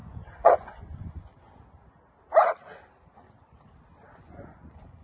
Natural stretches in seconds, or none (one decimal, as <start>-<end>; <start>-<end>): 1.3-4.2